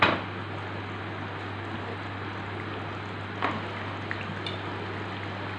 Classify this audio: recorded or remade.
recorded